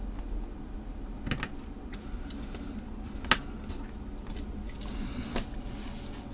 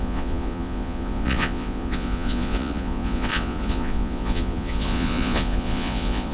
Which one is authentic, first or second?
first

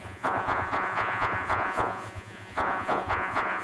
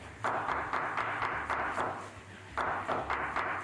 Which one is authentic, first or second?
second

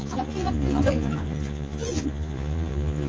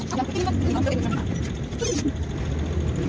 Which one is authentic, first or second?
second